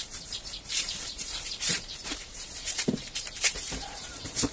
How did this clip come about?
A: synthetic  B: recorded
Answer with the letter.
A